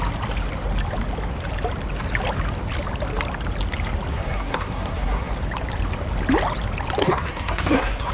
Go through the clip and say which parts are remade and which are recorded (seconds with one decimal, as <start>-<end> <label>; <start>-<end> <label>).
0.0-4.1 recorded; 4.1-5.3 remade; 5.3-7.0 recorded; 7.0-8.1 remade